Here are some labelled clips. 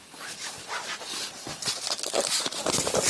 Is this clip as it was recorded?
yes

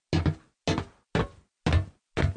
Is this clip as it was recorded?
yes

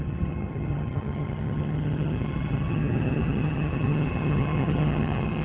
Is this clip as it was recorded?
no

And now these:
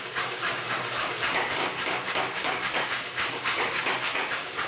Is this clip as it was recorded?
no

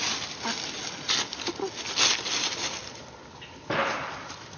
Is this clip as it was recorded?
yes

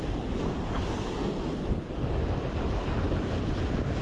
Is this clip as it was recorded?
yes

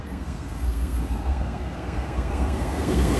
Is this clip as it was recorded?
no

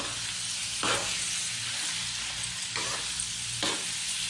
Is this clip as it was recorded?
yes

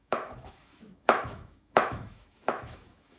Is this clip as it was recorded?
no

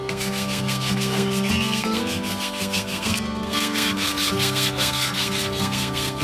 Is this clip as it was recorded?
no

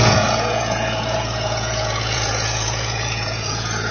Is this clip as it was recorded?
no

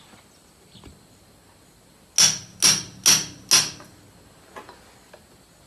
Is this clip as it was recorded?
yes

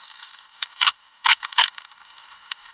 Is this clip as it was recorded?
no